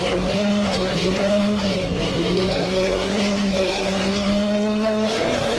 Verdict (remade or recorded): remade